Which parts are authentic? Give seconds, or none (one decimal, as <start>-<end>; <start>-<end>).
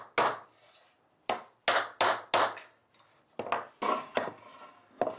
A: 0.0-5.2